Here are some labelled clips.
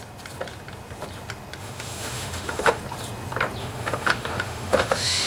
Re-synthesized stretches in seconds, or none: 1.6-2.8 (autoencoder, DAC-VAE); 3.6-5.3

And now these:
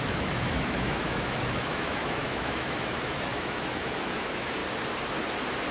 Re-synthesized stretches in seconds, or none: 0.0-4.6 (autoencoder, DAC-VAE)

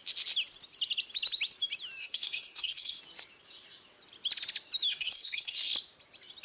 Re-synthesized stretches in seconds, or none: 2.0-3.0 (codec, SNAC); 4.9-5.7

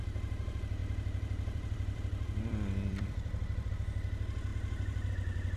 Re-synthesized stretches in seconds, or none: 0.8-3.7 (vocoder, BigVGAN v2); 4.5-5.1

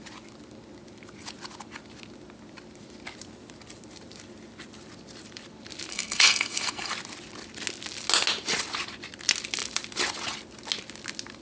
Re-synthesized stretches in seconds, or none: 5.9-6.9 (codec, SNAC)

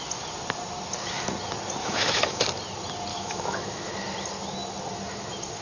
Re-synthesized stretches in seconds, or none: 1.8-2.4 (autoencoder, DAC-VAE); 3.1-3.9

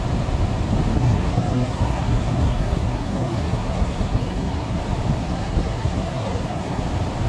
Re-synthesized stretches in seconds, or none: 0.9-4.8 (codec, SNAC); 5.2-6.8